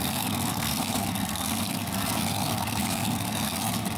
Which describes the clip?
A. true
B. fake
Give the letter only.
B